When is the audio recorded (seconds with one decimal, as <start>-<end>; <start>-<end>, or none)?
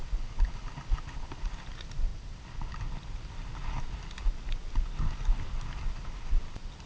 0.0-4.2; 4.9-6.9